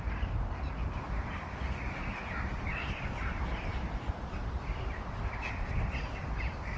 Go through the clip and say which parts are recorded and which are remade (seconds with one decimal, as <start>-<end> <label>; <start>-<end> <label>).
0.0-6.8 recorded